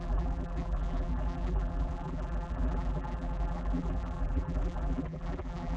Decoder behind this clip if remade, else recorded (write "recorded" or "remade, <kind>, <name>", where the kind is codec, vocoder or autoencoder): remade, vocoder, BigVGAN v2